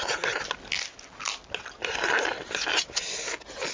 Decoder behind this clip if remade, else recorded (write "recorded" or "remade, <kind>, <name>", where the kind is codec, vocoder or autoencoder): recorded